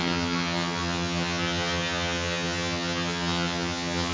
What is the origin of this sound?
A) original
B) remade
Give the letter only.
B